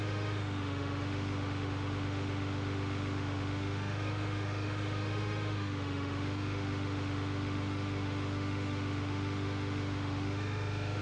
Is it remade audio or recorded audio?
remade